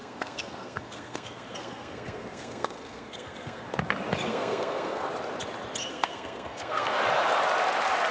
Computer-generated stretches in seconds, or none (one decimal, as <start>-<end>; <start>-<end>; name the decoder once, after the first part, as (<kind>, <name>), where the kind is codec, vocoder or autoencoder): 0.0-3.6 (codec, SNAC); 4.3-5.1; 5.9-7.0